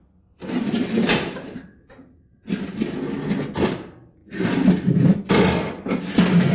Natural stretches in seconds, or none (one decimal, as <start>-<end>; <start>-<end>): 0.0-0.8; 2.5-6.5